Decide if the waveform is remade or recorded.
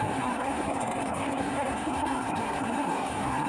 remade